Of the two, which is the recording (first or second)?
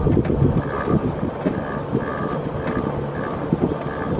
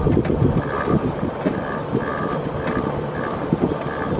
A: first